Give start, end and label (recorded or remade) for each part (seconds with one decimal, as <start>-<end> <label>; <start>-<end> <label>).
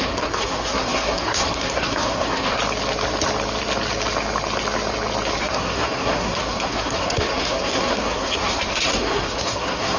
0.0-2.6 remade; 2.6-5.4 recorded; 5.4-10.0 remade